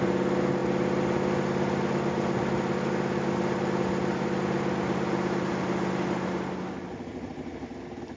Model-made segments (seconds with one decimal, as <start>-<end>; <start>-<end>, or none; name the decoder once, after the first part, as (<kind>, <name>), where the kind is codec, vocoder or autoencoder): none